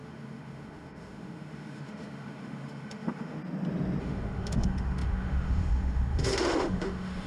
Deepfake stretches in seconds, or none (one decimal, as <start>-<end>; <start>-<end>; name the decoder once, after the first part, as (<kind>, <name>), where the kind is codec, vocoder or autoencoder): 0.0-3.4 (autoencoder, DAC-VAE); 4.0-7.3